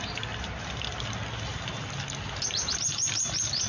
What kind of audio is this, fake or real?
real